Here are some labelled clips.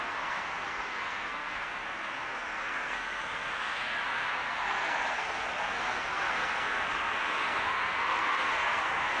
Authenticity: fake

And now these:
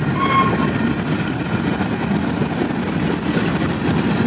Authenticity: real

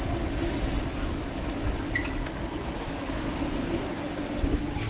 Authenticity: real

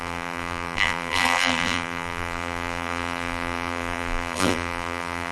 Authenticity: fake